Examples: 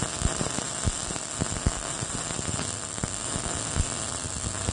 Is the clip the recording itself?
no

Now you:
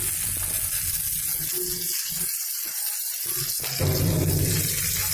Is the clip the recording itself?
yes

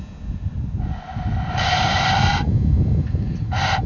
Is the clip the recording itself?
yes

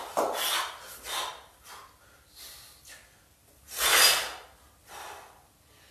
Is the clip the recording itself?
yes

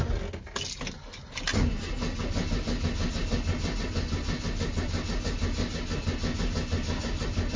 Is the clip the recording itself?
yes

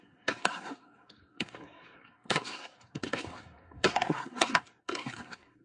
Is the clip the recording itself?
no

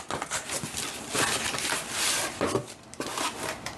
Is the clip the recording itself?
yes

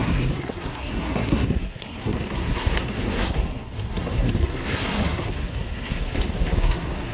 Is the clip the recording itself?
no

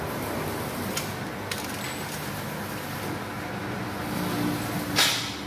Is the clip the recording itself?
yes